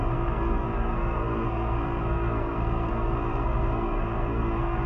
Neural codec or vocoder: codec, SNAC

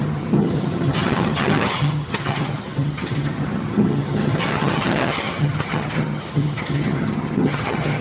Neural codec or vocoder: vocoder, HiFi-GAN